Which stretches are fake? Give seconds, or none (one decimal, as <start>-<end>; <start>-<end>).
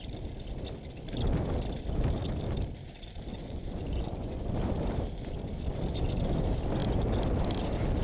3.3-4.4